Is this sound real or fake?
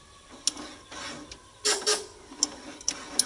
real